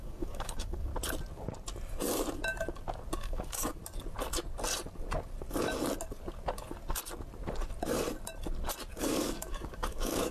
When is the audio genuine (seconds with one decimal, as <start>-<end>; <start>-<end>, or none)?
0.9-3.2; 3.8-9.0